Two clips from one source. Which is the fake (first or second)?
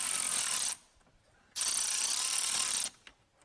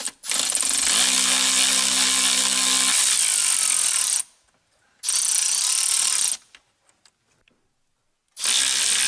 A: first